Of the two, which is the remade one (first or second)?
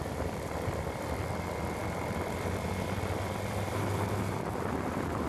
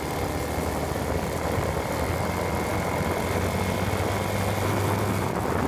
first